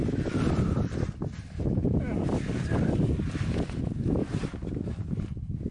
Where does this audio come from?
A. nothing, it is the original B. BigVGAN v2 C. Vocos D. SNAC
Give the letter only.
A